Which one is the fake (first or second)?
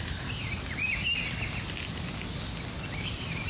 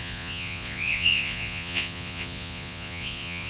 second